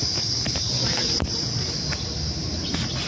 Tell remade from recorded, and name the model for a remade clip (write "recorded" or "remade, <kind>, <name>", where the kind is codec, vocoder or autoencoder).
recorded